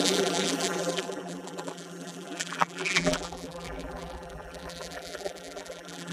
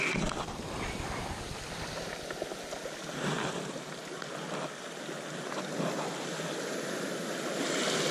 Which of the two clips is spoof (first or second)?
first